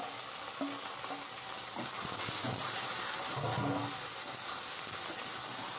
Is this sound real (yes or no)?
yes